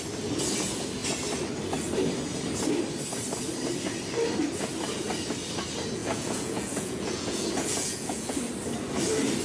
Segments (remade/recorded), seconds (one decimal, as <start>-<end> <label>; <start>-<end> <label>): 0.0-6.0 recorded; 6.0-8.4 remade; 8.4-9.4 recorded